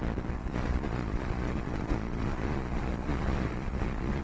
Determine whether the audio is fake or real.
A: fake